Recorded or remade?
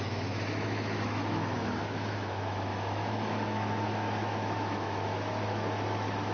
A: remade